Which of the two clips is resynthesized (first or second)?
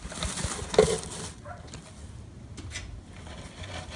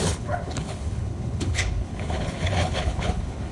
second